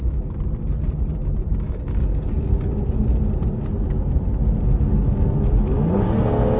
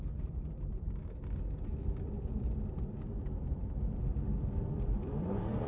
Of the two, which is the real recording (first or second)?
first